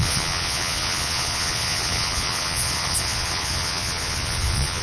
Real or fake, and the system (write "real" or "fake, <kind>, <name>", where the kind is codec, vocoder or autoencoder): fake, vocoder, Vocos